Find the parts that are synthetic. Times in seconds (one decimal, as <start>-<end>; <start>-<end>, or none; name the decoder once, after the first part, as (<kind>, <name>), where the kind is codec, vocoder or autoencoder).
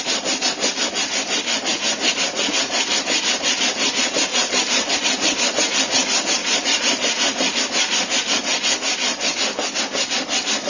4.3-4.9 (vocoder, BigVGAN v2); 6.4-7.6